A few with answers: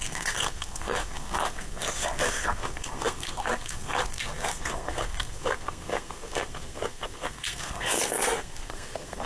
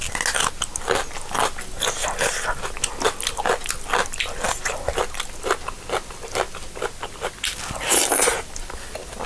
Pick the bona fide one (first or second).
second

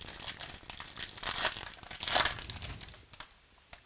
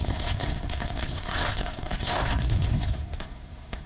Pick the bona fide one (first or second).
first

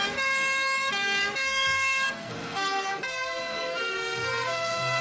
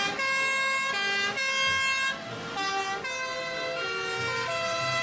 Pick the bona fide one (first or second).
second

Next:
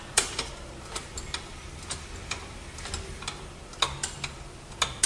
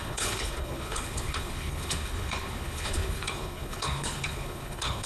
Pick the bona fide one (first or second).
first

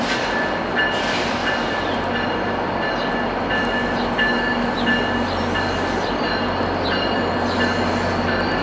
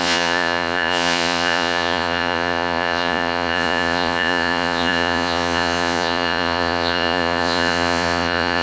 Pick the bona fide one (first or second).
first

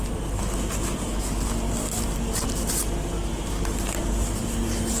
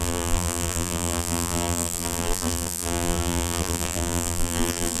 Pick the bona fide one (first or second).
first